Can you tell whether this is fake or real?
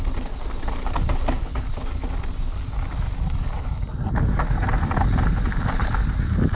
real